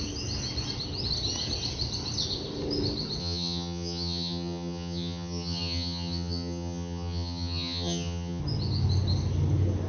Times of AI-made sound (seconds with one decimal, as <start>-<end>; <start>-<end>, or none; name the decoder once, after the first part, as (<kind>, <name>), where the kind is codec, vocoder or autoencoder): 3.2-8.4 (vocoder, HiFi-GAN)